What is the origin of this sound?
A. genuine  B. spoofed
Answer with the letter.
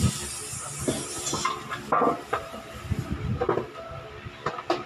A